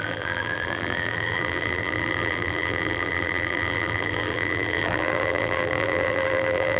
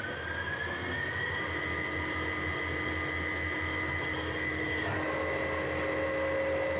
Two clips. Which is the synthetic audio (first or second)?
first